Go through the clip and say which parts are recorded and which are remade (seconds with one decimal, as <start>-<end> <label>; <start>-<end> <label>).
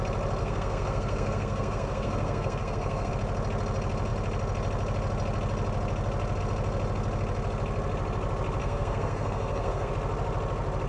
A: 0.0-0.4 recorded; 0.4-3.1 remade; 3.1-8.6 recorded; 8.6-9.9 remade; 9.9-10.9 recorded